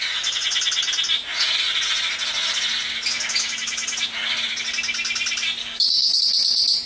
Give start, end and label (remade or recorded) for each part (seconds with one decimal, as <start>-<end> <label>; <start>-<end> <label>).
0.0-5.6 recorded; 5.6-6.2 remade; 6.2-6.9 recorded